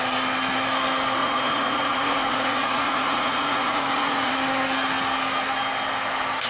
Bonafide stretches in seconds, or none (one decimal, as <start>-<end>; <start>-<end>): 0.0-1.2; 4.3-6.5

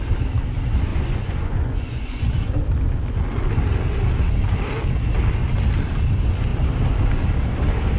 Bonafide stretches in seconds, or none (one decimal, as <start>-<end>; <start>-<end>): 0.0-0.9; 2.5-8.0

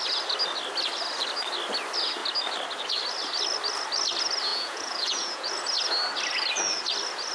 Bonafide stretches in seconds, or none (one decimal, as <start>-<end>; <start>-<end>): 0.0-4.5; 5.5-7.3

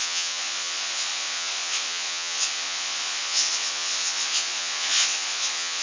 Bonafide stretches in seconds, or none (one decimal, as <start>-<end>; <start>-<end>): none

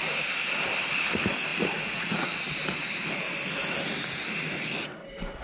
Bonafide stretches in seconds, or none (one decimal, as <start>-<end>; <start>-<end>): 0.0-1.5; 2.4-5.4

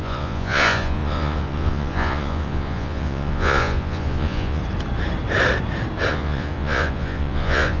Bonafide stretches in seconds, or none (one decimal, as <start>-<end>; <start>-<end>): 4.6-6.1

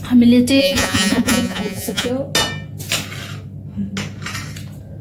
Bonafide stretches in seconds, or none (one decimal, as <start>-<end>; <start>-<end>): 0.0-0.6; 2.1-5.0